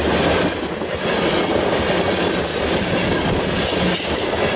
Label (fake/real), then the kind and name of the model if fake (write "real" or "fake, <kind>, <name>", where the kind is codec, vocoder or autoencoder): real